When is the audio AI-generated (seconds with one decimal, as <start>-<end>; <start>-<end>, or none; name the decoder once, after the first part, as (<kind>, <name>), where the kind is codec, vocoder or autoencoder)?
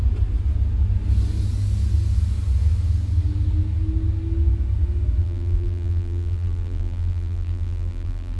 5.2-8.4 (vocoder, BigVGAN v2)